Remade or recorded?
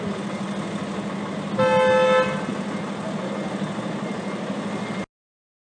recorded